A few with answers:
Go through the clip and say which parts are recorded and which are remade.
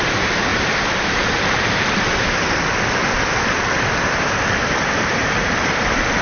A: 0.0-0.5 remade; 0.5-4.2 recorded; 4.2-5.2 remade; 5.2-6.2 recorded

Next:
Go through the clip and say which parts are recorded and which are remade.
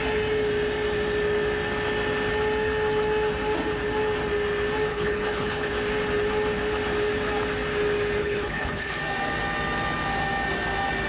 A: 0.0-4.9 recorded; 4.9-5.7 remade; 5.7-8.2 recorded; 8.2-9.0 remade; 9.0-11.1 recorded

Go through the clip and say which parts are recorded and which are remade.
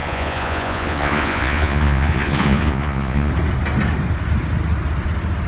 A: 0.0-3.3 remade; 3.3-5.5 recorded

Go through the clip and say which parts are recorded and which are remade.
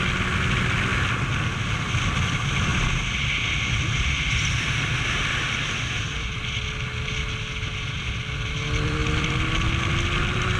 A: 0.0-10.6 recorded